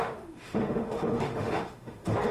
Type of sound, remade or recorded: remade